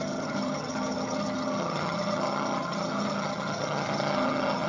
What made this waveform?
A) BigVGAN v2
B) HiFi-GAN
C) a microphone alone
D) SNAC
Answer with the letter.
B